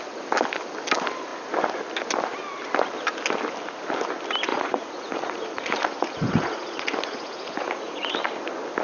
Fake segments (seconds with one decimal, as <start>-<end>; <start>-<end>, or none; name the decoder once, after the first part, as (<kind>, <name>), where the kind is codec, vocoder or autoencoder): 4.5-8.1 (vocoder, Vocos)